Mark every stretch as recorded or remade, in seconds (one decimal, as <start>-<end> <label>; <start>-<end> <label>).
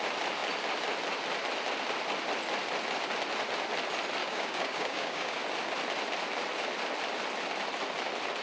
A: 0.0-4.2 recorded; 4.2-5.4 remade; 5.4-8.4 recorded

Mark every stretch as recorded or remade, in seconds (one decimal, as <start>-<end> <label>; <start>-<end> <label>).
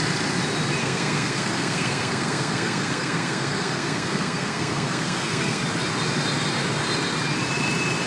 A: 0.0-0.8 recorded; 0.8-5.6 remade; 5.6-8.1 recorded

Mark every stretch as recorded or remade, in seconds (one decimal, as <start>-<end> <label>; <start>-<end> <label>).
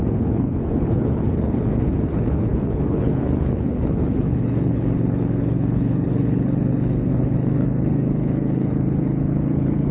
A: 0.0-9.9 remade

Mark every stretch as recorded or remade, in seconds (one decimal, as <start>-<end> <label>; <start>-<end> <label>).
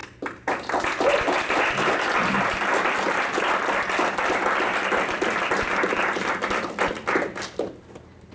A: 0.0-8.3 recorded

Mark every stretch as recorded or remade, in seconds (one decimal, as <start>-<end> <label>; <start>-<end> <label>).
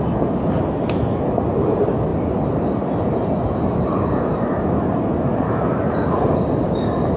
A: 0.0-5.3 recorded; 5.3-6.3 remade; 6.3-7.2 recorded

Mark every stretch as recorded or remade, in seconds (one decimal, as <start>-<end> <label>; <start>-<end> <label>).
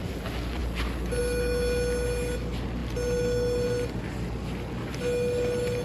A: 0.0-5.8 recorded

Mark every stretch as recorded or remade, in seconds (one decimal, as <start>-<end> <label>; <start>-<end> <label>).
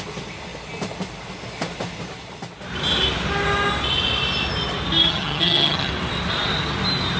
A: 0.0-5.1 recorded; 5.1-5.9 remade; 5.9-7.2 recorded